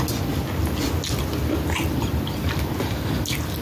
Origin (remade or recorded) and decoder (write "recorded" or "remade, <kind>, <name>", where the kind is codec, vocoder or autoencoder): recorded